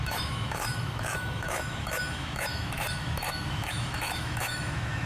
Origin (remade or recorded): remade